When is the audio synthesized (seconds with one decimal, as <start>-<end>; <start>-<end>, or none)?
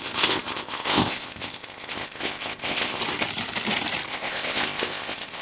0.0-3.0; 4.1-5.4